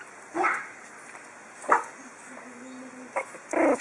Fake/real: real